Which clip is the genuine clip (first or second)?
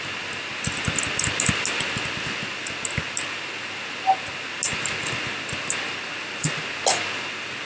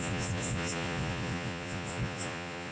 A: first